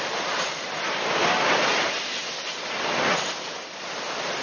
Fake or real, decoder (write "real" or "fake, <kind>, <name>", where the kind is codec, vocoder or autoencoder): real